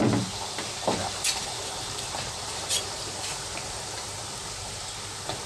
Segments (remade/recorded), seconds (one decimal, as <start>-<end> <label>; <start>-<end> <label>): 0.0-1.0 recorded; 1.0-4.2 remade; 4.2-5.5 recorded